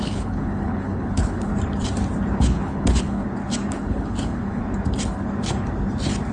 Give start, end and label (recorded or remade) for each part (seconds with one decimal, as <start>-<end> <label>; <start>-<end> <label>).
0.0-1.5 remade; 1.5-2.4 recorded; 2.4-3.2 remade; 3.2-3.7 recorded; 3.7-4.6 remade; 4.6-6.3 recorded